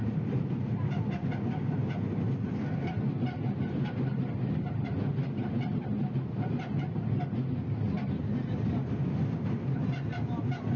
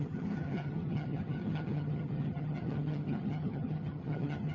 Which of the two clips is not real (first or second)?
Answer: second